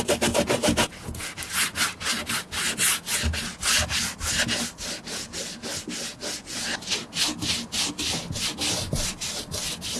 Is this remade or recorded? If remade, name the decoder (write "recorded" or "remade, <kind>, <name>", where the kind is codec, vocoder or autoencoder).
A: recorded